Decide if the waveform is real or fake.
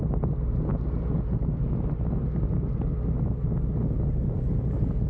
real